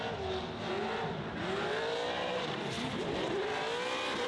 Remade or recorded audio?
recorded